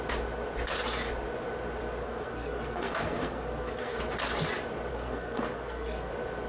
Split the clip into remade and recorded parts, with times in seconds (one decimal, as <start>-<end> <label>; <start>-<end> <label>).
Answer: 0.0-2.0 recorded; 2.0-4.0 remade; 4.0-4.9 recorded; 4.9-6.1 remade; 6.1-6.5 recorded